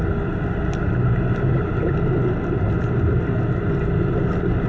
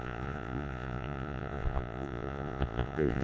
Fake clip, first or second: second